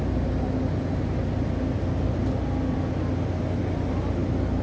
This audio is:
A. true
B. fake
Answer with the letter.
A